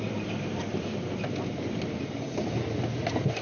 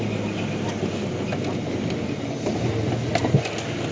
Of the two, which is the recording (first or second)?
second